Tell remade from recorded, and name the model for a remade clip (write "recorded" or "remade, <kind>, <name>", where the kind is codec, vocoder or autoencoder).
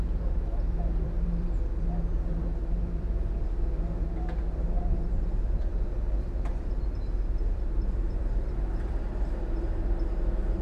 remade, vocoder, BigVGAN v2